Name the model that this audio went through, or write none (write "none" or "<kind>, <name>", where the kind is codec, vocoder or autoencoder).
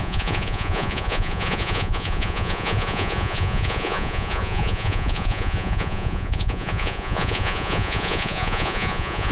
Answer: vocoder, Vocos